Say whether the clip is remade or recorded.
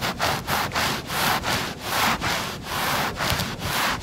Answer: remade